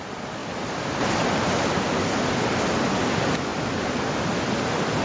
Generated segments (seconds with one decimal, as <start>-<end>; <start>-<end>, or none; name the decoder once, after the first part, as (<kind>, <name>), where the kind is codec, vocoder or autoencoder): 0.4-2.1 (vocoder, BigVGAN v2); 3.5-4.0